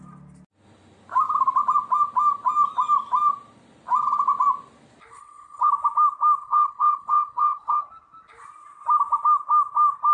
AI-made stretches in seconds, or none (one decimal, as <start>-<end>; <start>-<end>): 5.1-5.7; 6.4-7.8